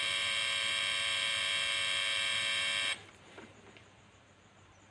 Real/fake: fake